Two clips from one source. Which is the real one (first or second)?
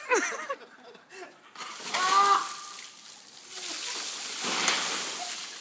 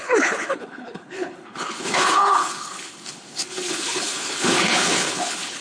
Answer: first